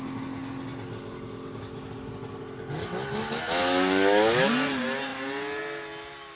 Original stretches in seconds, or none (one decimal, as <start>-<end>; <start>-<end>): 0.0-3.6; 4.5-6.4